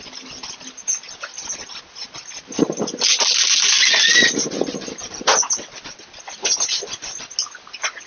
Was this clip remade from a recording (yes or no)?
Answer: no